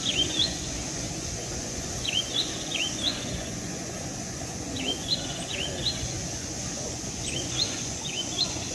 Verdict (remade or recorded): remade